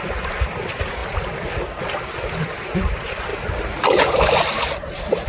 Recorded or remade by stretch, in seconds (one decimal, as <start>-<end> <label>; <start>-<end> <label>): 0.0-3.3 remade; 3.3-4.4 recorded; 4.4-5.3 remade